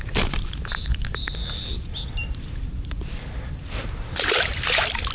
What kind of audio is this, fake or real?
fake